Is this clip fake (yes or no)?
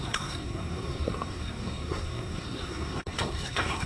yes